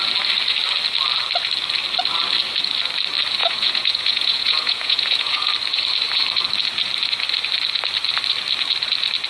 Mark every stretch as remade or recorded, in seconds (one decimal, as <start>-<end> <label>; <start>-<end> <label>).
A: 0.0-3.4 recorded; 3.4-5.5 remade; 5.5-9.3 recorded